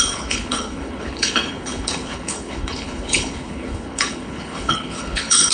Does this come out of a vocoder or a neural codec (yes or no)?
yes